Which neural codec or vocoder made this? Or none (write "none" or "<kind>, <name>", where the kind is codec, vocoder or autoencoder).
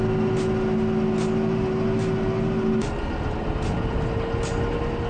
none